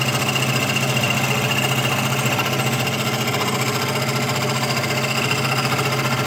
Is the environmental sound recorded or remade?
recorded